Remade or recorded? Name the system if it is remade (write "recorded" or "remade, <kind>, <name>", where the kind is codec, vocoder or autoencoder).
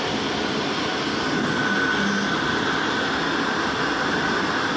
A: recorded